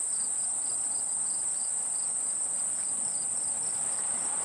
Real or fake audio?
real